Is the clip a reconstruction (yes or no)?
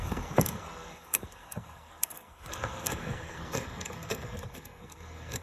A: yes